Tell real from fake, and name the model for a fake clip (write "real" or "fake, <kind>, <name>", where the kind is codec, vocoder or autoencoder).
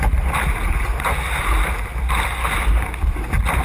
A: real